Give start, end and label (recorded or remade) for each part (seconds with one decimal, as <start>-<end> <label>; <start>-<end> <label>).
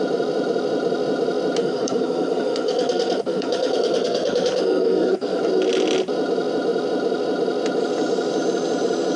0.0-1.6 recorded; 1.6-5.4 remade; 5.4-9.2 recorded